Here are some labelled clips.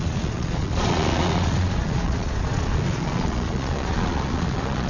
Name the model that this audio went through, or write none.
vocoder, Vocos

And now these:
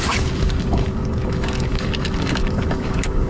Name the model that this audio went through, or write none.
codec, DAC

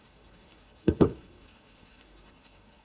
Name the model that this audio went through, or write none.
codec, SNAC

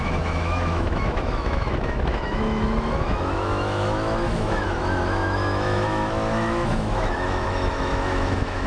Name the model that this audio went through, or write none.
autoencoder, DAC-VAE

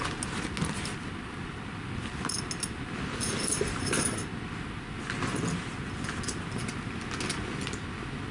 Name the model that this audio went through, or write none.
none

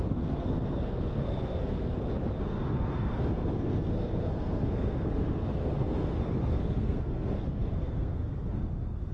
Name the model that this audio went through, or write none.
codec, SNAC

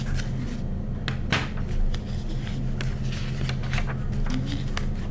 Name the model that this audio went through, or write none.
none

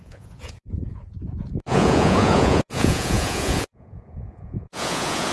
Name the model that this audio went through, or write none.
vocoder, Vocos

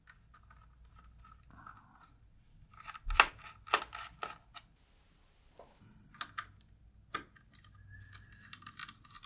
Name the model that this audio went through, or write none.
none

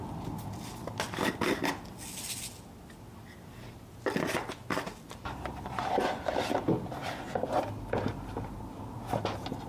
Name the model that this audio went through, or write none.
none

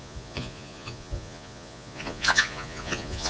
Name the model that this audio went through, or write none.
vocoder, Vocos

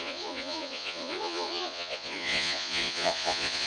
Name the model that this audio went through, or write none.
vocoder, Vocos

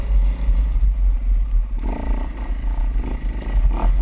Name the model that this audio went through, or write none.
none